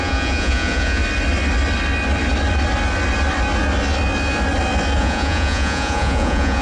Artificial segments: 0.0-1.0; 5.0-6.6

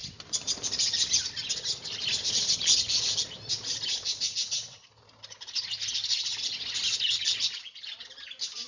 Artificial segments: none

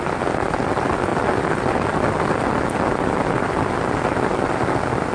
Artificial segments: none

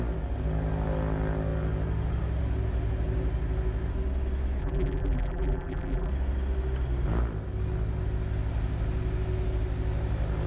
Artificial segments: 4.6-6.1

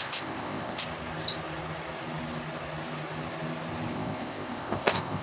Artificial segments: 0.0-0.8; 3.9-5.2

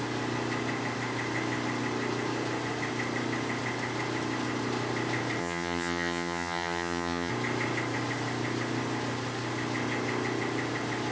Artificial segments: 5.4-7.3